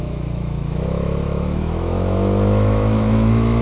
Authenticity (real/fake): fake